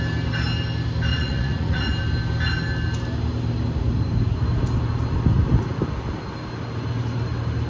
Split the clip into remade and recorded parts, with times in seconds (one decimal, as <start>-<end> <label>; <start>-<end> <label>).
0.0-1.1 recorded; 1.1-1.9 remade; 1.9-7.7 recorded